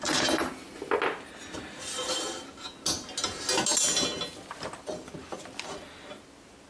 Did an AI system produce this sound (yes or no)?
no